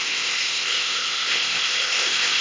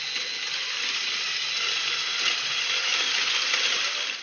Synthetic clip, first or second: first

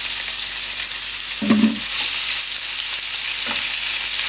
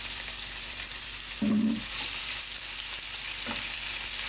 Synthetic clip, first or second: second